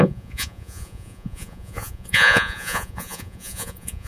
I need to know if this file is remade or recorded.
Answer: remade